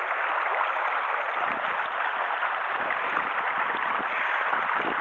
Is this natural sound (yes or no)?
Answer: yes